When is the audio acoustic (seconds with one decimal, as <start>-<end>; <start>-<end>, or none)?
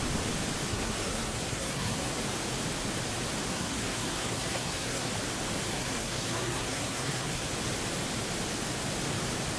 0.0-0.7; 2.2-3.5; 5.1-5.7; 7.5-9.6